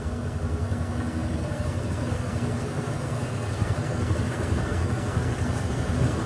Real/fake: fake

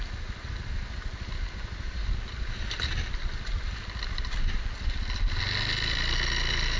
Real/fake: real